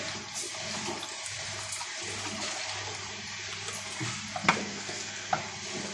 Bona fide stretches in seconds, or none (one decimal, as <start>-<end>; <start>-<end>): 0.0-4.6; 5.3-5.9